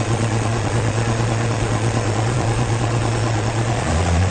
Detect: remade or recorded remade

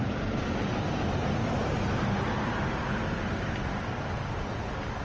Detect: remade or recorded recorded